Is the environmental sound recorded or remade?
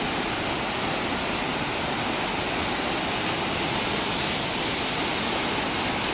recorded